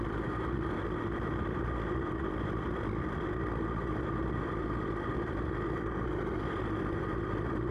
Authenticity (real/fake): real